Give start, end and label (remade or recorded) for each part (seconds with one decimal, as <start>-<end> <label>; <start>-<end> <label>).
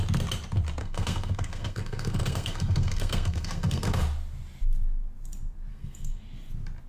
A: 0.0-0.8 recorded; 0.8-4.0 remade; 4.0-5.7 recorded; 5.7-6.2 remade; 6.2-6.9 recorded